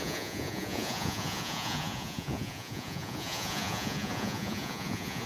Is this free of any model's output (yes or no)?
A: no